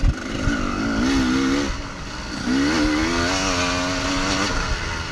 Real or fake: real